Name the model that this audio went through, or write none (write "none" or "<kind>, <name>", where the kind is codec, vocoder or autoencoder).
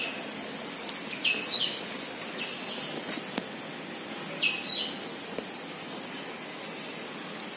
none